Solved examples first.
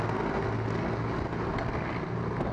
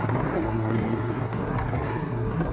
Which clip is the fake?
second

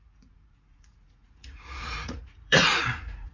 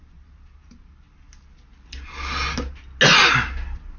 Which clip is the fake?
first